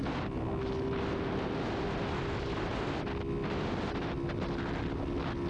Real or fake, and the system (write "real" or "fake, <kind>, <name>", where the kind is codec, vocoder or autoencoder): real